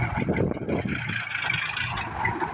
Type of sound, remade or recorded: recorded